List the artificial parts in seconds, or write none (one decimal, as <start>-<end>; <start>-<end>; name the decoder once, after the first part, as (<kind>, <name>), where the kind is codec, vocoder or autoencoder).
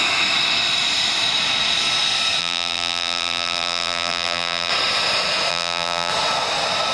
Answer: 2.4-4.7 (vocoder, BigVGAN v2); 5.5-6.1